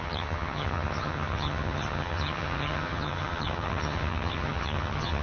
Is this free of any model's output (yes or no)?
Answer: no